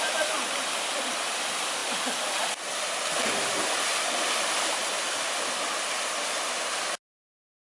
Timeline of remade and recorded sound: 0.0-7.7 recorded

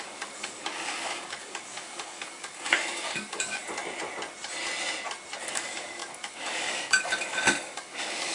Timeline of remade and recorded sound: 0.0-3.6 remade; 3.6-5.5 recorded; 5.5-8.3 remade